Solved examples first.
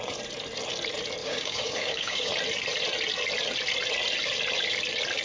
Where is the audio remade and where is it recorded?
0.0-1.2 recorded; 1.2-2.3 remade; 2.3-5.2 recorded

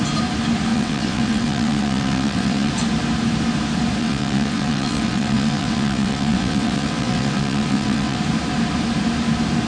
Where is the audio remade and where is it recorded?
0.0-0.7 recorded; 0.7-2.7 remade; 2.7-4.0 recorded; 4.0-8.2 remade; 8.2-9.7 recorded

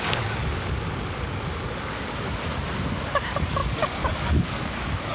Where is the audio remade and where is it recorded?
0.0-2.3 remade; 2.3-3.0 recorded; 3.0-5.1 remade

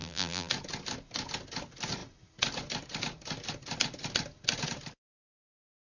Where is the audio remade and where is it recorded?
0.0-0.5 remade; 0.5-6.0 recorded

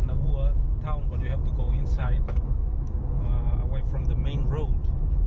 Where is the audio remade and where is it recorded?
0.0-2.0 recorded; 2.0-3.0 remade; 3.0-5.3 recorded

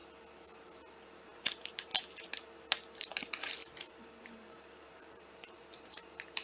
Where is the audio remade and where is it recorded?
0.0-0.6 recorded; 0.6-1.9 remade; 1.9-3.0 recorded; 3.0-3.6 remade; 3.6-4.2 recorded; 4.2-6.4 remade